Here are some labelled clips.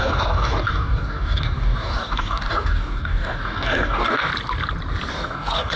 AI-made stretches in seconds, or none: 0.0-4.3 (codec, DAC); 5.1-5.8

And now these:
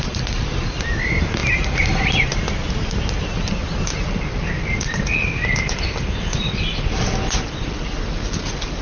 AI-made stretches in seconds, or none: none

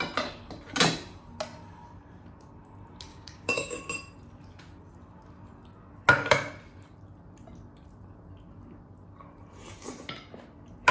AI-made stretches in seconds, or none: 3.1-3.8 (codec, DAC)